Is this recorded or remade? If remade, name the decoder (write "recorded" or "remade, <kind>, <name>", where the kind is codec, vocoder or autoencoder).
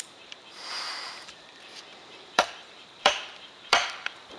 remade, vocoder, BigVGAN v2